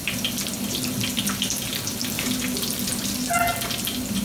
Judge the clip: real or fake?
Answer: real